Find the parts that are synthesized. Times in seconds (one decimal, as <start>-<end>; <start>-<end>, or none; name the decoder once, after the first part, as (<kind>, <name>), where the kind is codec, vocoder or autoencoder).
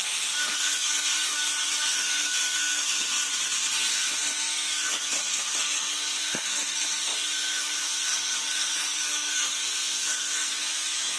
0.0-3.3 (codec, SNAC); 3.9-11.2